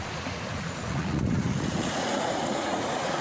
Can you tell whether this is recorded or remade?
remade